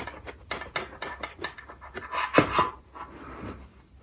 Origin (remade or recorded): recorded